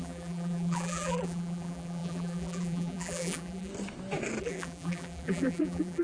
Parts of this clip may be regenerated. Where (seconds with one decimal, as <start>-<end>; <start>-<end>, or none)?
0.0-3.7; 4.4-6.0